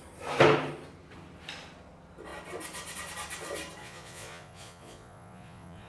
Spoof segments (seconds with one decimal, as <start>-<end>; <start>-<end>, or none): 3.8-5.9